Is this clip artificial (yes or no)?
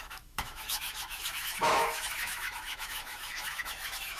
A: yes